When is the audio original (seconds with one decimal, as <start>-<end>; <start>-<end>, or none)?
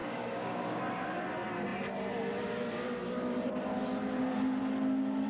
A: 0.8-5.3